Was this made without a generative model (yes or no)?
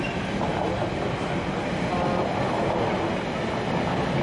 yes